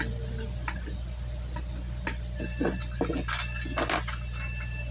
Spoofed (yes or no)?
no